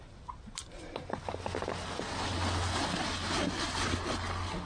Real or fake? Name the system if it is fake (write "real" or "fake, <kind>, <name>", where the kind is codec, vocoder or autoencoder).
real